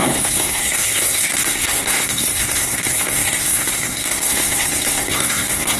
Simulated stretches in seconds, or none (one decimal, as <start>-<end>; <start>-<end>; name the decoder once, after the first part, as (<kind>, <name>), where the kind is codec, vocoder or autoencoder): 0.0-5.8 (codec, SNAC)